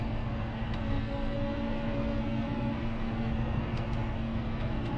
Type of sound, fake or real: fake